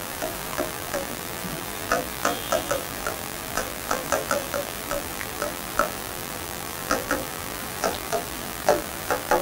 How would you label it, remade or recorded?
remade